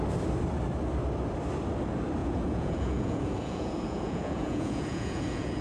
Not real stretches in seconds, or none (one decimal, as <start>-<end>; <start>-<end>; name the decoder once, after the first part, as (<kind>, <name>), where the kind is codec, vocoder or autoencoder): 2.2-5.6 (vocoder, Vocos)